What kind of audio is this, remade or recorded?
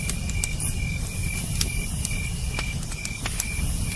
recorded